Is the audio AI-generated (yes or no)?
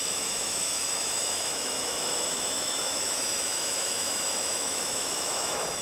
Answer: yes